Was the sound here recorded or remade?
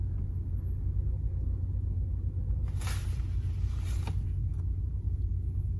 recorded